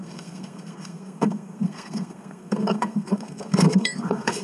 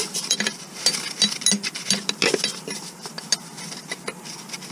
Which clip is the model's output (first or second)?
first